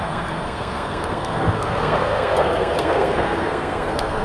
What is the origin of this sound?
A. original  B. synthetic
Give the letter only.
B